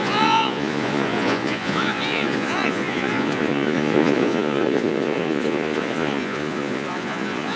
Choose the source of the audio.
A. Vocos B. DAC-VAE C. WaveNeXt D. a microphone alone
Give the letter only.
A